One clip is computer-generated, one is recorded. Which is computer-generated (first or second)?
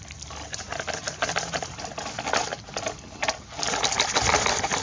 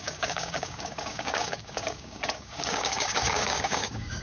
second